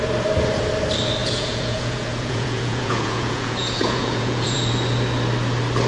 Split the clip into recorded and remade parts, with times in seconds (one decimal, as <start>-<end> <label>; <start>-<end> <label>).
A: 0.0-1.2 recorded; 1.2-4.7 remade; 4.7-5.9 recorded